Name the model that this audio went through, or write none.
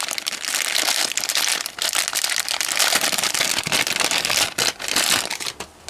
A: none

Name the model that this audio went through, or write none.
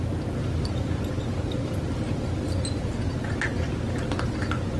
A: none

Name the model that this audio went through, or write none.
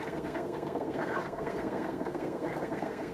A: codec, SNAC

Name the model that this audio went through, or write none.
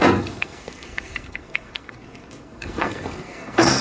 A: codec, SNAC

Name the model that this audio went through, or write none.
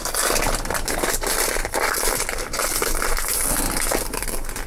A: none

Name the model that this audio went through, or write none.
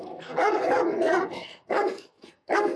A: codec, SNAC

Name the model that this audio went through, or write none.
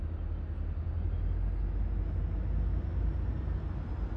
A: none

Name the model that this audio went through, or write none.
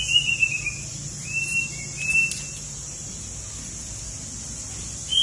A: none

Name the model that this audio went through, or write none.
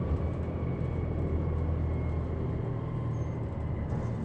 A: none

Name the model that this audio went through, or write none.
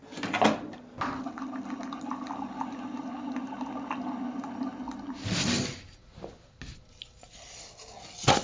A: none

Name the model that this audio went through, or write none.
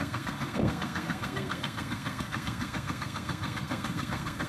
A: codec, SNAC